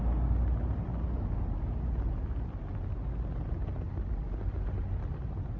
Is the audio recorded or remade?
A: recorded